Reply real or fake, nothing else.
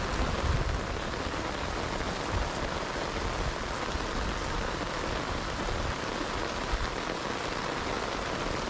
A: real